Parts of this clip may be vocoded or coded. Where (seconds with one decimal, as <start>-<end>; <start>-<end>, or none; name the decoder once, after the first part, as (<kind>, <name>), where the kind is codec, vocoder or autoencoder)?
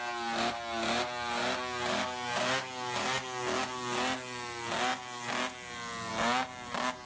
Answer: none